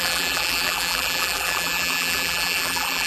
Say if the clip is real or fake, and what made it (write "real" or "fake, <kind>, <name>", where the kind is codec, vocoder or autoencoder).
fake, vocoder, BigVGAN v2